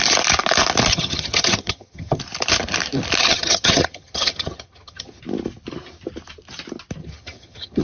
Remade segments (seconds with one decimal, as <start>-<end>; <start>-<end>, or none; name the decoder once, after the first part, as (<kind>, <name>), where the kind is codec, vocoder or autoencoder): 0.9-2.2 (vocoder, HiFi-GAN); 3.2-5.2; 7.0-7.8